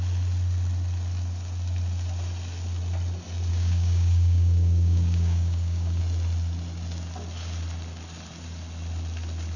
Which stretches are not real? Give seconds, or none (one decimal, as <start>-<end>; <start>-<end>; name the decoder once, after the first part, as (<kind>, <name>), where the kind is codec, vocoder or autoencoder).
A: 3.5-6.0 (codec, DAC)